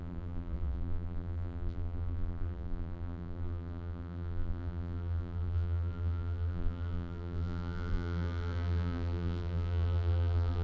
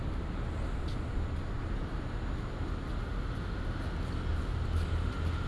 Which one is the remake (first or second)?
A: first